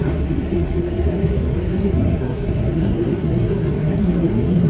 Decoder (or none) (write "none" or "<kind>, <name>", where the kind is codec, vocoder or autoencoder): codec, SNAC